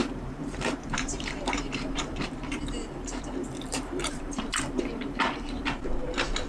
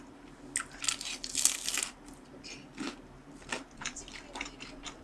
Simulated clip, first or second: first